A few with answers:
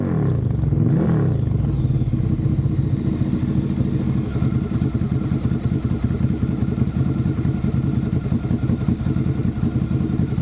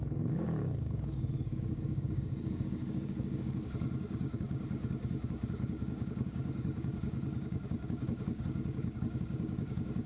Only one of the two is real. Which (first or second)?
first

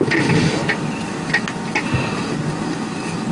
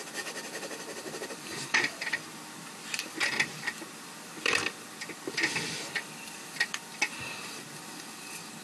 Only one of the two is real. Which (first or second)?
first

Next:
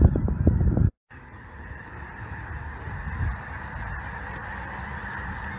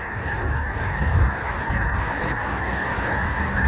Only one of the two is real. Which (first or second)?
first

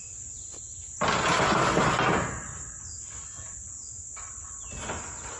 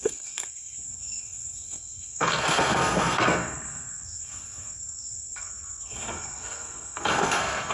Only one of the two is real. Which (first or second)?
first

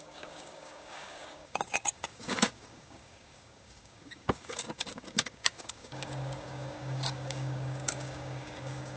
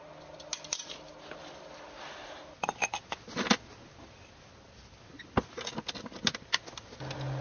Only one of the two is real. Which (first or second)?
second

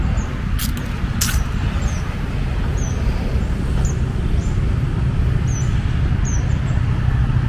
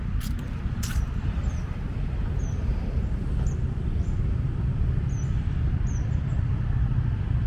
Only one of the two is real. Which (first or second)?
first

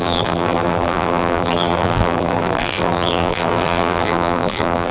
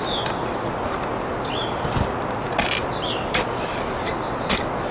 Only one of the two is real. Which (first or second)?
second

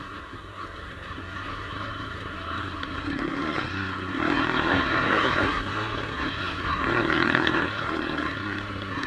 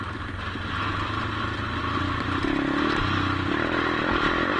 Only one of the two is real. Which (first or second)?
second